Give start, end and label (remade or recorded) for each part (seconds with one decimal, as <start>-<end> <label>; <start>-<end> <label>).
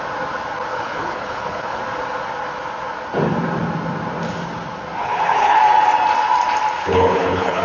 0.0-0.7 recorded; 0.7-1.8 remade; 1.8-5.0 recorded; 5.0-5.6 remade; 5.6-6.8 recorded; 6.8-7.6 remade